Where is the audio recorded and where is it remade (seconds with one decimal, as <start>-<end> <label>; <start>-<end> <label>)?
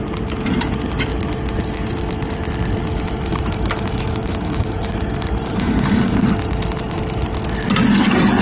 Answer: 0.0-4.2 recorded; 4.2-6.3 remade; 6.3-8.4 recorded